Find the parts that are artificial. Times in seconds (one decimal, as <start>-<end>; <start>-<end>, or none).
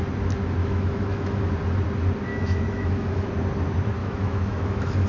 0.6-1.4; 2.3-3.3; 4.0-5.1